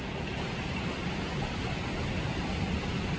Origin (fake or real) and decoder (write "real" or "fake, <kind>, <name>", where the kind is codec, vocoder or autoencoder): real